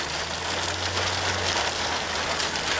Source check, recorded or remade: recorded